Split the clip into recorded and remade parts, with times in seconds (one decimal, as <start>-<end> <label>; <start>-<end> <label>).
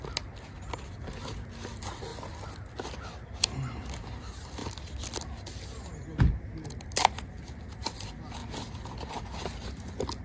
0.0-10.2 recorded